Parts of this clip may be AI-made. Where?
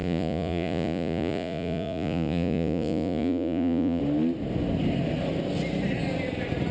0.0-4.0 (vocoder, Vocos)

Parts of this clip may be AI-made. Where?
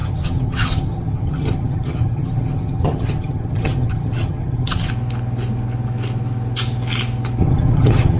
0.0-4.9 (vocoder, HiFi-GAN); 7.4-8.2